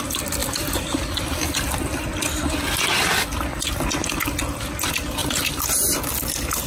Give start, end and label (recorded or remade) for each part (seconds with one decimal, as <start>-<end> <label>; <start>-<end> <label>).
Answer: 0.0-5.2 recorded; 5.2-5.7 remade; 5.7-6.7 recorded